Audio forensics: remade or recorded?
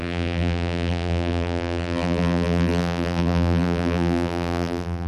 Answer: remade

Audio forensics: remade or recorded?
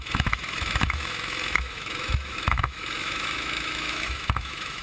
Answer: remade